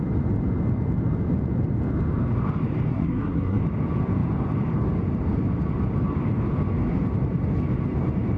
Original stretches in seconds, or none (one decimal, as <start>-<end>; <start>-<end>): 0.0-2.9; 3.6-8.4